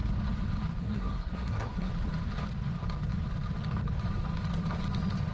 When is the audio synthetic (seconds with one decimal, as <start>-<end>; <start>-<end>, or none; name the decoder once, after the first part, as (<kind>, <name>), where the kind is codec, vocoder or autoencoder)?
0.8-1.9 (codec, SNAC)